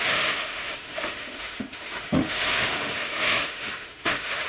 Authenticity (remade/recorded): remade